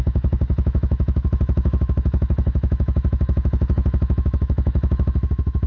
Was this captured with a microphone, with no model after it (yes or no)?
no